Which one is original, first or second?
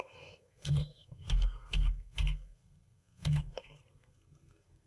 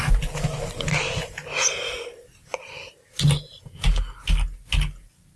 second